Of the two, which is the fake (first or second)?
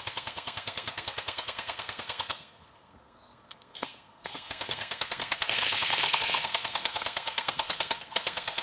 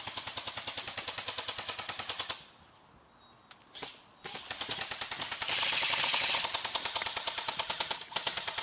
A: first